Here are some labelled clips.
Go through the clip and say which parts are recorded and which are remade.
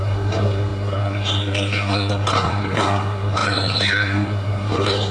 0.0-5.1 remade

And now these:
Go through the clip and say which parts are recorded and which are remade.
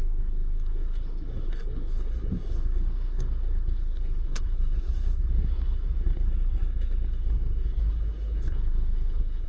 0.0-9.5 remade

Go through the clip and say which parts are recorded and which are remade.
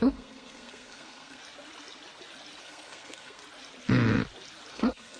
0.0-1.4 remade; 1.4-2.6 recorded; 2.6-3.4 remade; 3.4-4.7 recorded; 4.7-5.2 remade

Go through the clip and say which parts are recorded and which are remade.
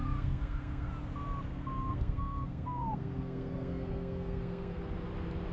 0.0-0.9 remade; 0.9-1.5 recorded; 1.5-4.8 remade; 4.8-5.5 recorded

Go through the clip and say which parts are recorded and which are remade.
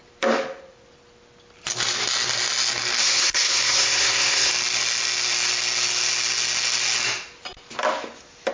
0.0-3.0 recorded; 3.0-4.5 remade; 4.5-8.5 recorded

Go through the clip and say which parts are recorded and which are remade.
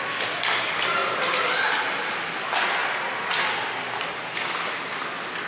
0.0-5.5 recorded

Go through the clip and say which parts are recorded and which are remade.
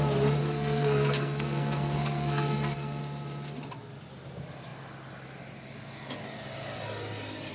0.0-0.4 recorded; 0.4-3.0 remade; 3.0-7.5 recorded